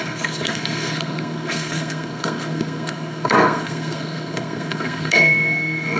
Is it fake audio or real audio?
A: fake